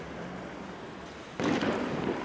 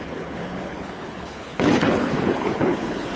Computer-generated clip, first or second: second